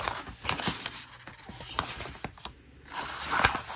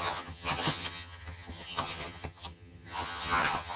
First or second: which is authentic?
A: first